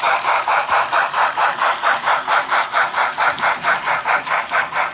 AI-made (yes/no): yes